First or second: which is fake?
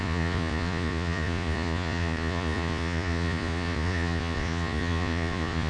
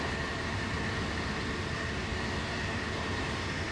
first